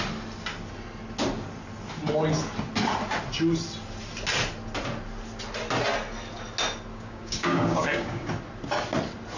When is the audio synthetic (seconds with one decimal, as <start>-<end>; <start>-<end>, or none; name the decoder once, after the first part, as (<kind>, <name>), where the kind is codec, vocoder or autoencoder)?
6.9-8.3 (codec, DAC)